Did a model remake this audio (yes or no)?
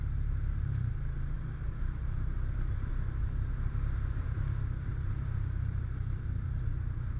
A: yes